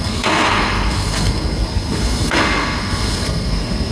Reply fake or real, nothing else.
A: fake